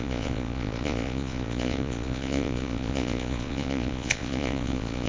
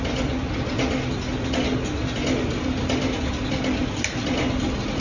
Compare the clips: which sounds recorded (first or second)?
second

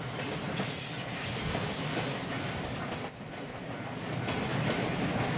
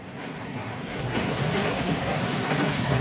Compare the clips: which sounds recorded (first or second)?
first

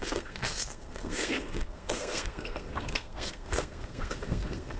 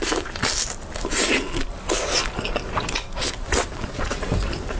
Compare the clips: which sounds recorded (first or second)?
second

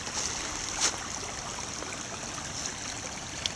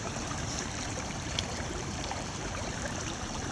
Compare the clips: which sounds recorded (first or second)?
first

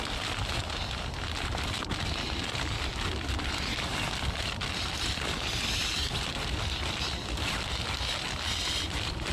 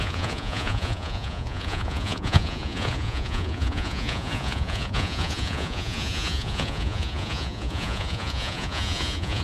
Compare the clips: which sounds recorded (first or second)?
first